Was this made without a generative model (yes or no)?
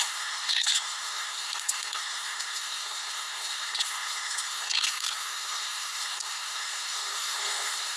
no